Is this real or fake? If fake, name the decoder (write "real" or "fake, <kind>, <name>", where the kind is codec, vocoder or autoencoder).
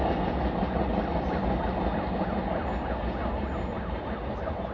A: real